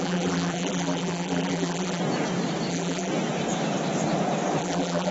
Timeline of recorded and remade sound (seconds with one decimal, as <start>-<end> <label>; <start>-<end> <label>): 0.0-2.0 remade; 2.0-2.7 recorded; 2.7-3.1 remade; 3.1-4.6 recorded; 4.6-5.1 remade